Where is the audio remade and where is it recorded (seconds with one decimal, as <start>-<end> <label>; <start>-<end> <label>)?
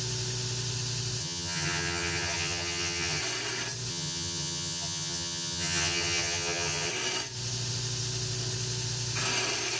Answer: 0.0-1.2 recorded; 1.2-3.2 remade; 3.2-3.9 recorded; 3.9-6.9 remade; 6.9-9.8 recorded